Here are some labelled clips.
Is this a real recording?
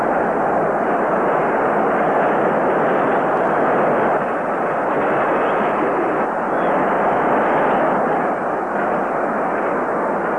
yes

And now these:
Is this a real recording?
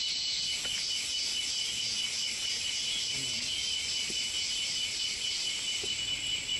yes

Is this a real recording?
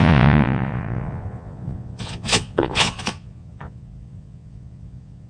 no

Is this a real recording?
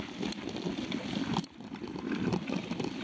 yes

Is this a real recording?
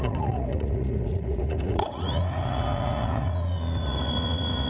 no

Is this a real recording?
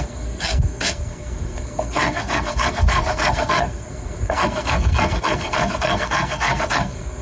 no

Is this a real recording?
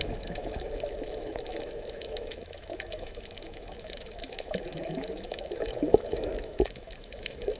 no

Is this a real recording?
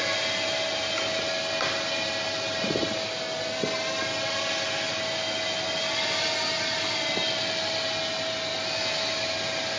yes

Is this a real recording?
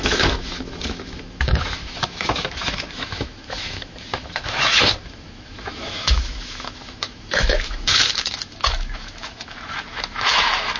no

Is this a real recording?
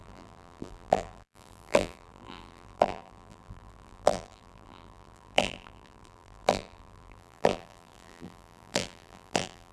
no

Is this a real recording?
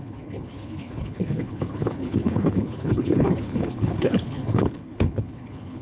no